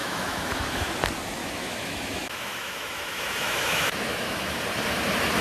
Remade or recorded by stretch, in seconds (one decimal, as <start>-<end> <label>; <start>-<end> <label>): 0.0-0.9 remade; 0.9-1.4 recorded; 1.4-4.6 remade; 4.6-5.4 recorded